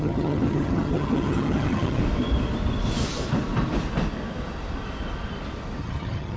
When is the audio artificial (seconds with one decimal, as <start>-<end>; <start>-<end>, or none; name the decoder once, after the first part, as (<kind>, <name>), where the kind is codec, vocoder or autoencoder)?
0.0-2.0 (vocoder, HiFi-GAN); 5.8-6.4